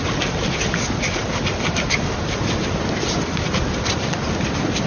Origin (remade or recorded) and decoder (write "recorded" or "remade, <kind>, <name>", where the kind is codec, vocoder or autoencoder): recorded